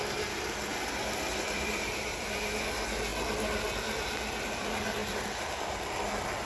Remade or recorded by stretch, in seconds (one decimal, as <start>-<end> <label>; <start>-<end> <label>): 0.0-0.7 recorded; 0.7-2.7 remade; 2.7-5.0 recorded; 5.0-6.5 remade